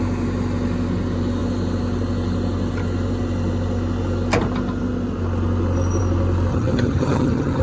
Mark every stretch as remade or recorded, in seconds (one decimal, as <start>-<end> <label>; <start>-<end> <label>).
0.0-6.5 recorded; 6.5-7.6 remade

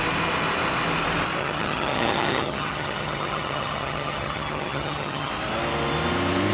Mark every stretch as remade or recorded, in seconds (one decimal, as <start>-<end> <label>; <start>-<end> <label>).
0.0-1.4 recorded; 1.4-5.3 remade; 5.3-6.5 recorded